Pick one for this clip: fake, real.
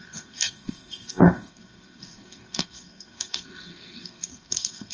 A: fake